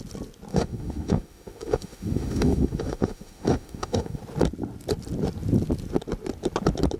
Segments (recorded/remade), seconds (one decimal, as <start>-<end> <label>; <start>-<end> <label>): 0.0-0.5 recorded; 0.5-4.2 remade; 4.2-7.0 recorded